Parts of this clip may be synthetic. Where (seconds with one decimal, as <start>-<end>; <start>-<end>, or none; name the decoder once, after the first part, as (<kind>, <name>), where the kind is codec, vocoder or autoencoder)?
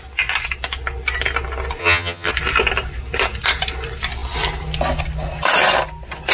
1.8-2.3 (vocoder, HiFi-GAN)